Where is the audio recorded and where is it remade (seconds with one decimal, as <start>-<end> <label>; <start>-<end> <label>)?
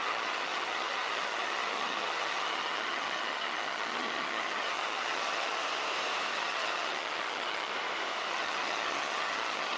0.0-5.6 remade; 5.6-6.3 recorded; 6.3-7.7 remade; 7.7-8.3 recorded; 8.3-9.8 remade